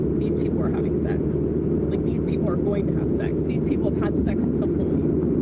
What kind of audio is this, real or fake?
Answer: real